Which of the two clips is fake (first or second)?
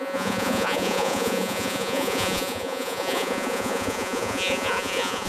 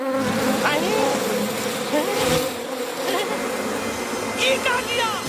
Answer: first